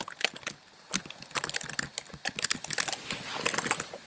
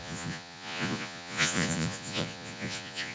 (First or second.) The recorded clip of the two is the first